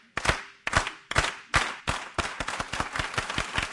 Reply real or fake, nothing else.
real